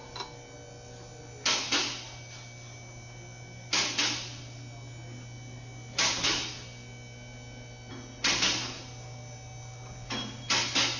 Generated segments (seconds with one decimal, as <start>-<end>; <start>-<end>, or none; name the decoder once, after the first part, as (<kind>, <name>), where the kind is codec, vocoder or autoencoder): none